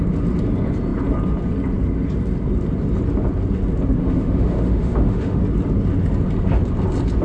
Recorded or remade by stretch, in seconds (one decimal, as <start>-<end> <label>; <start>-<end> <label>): 0.0-4.0 recorded; 4.0-5.4 remade; 5.4-7.2 recorded